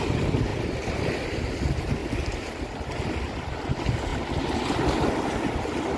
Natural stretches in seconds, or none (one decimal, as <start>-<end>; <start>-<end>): 0.0-6.0